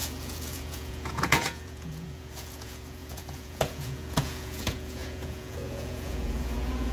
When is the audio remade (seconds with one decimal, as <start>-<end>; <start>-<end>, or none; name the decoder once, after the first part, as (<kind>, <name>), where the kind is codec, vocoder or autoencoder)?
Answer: 0.0-6.9 (vocoder, Vocos)